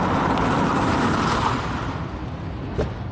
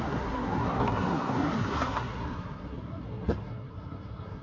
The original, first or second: first